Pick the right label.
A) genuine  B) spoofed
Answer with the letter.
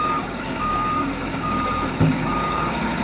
B